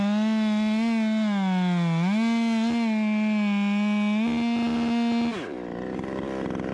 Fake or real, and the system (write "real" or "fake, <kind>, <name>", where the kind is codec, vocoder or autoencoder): real